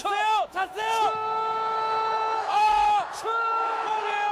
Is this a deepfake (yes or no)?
yes